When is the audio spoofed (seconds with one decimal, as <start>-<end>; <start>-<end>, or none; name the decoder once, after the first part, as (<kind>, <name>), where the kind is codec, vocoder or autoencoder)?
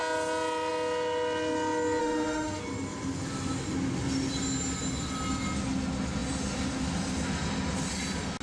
2.0-2.6 (autoencoder, DAC-VAE)